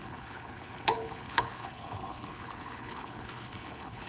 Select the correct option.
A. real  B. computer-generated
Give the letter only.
B